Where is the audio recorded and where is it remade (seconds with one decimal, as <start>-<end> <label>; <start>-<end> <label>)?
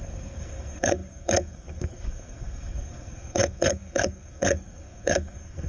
0.0-5.7 remade